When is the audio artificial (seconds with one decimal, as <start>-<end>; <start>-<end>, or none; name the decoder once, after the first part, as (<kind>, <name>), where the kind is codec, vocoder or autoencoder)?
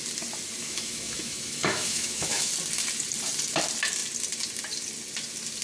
0.6-2.5 (autoencoder, DAC-VAE)